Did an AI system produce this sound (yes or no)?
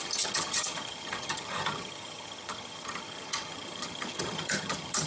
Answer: yes